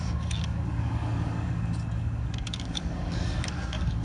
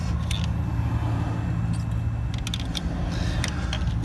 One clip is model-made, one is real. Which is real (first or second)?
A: second